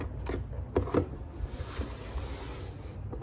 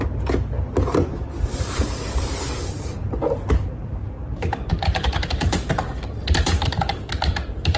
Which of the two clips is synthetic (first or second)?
second